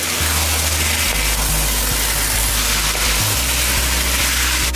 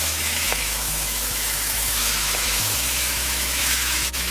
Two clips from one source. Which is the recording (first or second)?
first